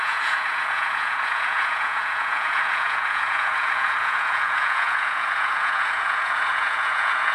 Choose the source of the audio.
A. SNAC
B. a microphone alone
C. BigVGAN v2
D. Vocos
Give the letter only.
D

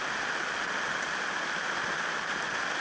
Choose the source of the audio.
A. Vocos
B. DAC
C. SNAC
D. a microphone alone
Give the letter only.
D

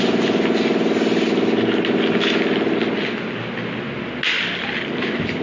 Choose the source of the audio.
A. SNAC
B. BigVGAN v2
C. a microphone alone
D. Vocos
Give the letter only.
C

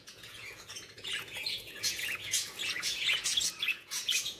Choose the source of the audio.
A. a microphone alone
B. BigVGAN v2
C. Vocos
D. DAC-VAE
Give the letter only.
C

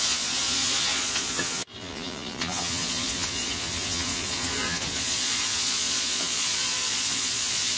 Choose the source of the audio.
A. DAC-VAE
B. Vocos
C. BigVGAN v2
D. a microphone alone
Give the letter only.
B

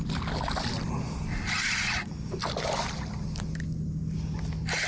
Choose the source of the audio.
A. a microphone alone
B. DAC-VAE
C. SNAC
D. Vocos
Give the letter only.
A